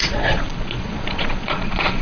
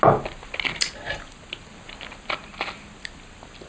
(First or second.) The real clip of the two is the second